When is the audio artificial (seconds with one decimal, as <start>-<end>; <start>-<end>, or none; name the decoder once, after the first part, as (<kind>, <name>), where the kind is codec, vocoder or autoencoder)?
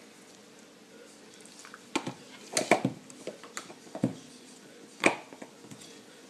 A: 0.0-0.4 (vocoder, Vocos); 3.7-6.3